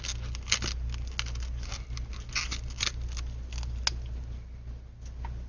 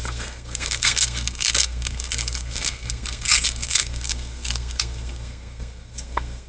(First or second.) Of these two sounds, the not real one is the second